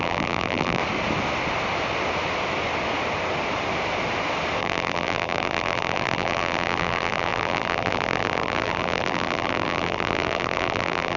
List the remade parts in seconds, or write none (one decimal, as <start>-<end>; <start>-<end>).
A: 0.0-0.8; 4.6-11.2